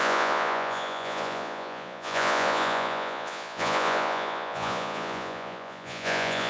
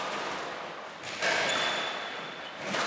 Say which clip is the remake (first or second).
first